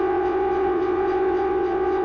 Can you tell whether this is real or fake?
fake